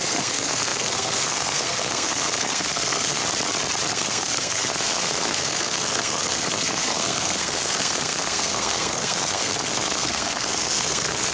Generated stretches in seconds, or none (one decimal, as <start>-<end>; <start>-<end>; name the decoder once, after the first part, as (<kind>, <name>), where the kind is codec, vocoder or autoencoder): 0.0-3.2 (codec, SNAC); 3.9-11.3